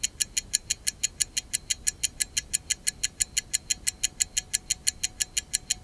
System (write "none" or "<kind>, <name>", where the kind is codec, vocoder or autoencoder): none